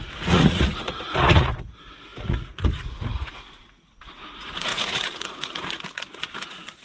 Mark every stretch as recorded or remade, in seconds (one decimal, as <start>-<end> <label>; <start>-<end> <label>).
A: 0.0-6.8 remade